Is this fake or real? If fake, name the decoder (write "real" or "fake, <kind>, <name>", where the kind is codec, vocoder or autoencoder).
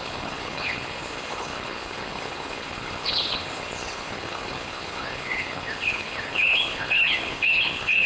fake, codec, HILCodec